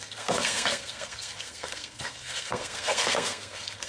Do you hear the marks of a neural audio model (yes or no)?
yes